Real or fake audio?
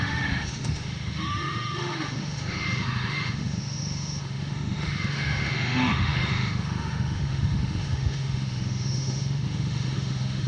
fake